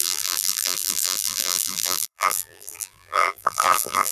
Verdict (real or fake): fake